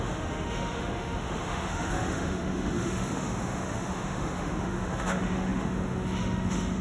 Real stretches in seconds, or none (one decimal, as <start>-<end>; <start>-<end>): none

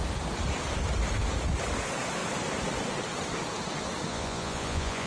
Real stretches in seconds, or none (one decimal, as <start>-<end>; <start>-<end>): 0.0-4.1